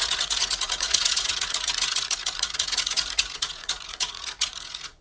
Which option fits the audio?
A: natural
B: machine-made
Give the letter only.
B